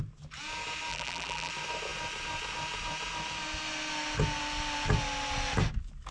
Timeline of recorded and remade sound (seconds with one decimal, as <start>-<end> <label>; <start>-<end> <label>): 0.0-0.9 recorded; 0.9-1.5 remade; 1.5-6.1 recorded